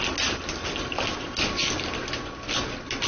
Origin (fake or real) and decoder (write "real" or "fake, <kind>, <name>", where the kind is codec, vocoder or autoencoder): real